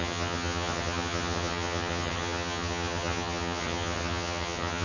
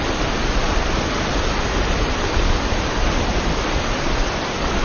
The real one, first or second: second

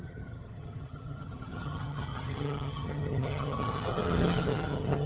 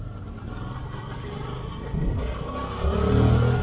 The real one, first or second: second